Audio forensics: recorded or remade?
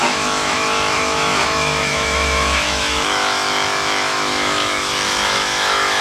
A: remade